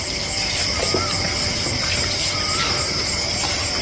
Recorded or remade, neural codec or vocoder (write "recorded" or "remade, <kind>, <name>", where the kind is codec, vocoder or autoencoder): recorded